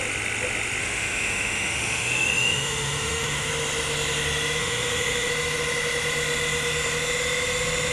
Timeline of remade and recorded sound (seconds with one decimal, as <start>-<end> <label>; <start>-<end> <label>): 0.0-0.8 recorded; 0.8-3.5 remade; 3.5-4.6 recorded; 4.6-5.3 remade; 5.3-7.9 recorded